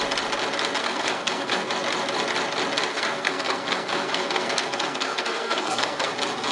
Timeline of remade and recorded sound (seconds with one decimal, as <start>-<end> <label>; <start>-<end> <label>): 0.0-0.8 recorded; 0.8-1.7 remade; 1.7-2.9 recorded; 2.9-6.1 remade; 6.1-6.5 recorded